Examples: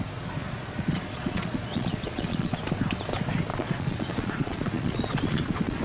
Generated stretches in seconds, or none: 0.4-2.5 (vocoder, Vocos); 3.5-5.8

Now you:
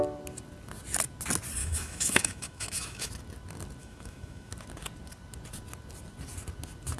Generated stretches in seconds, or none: 1.6-3.1 (autoencoder, DAC-VAE); 3.8-4.5

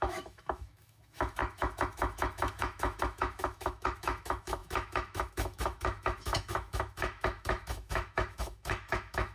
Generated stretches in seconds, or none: 0.0-9.3 (autoencoder, DAC-VAE)

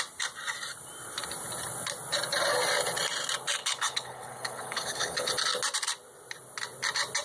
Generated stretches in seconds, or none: 3.6-5.3 (codec, HILCodec)

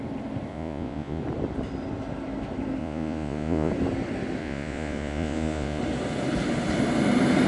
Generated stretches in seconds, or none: 0.5-1.2 (vocoder, Vocos); 2.8-3.7; 4.4-5.8

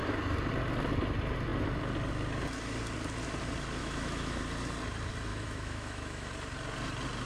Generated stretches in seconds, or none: 3.8-4.4 (autoencoder, DAC-VAE); 5.3-6.3

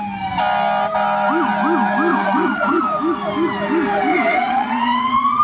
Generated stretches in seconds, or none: 2.1-2.8 (vocoder, WaveNeXt); 4.1-5.4

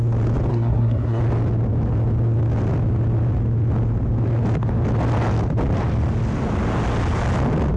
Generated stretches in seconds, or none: 0.5-1.2 (codec, SNAC)